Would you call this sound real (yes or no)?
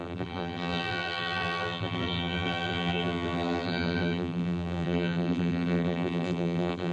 no